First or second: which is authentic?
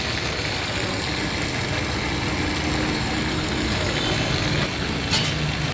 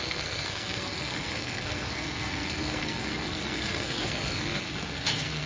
first